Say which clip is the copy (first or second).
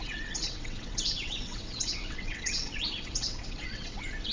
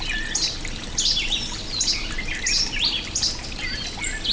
first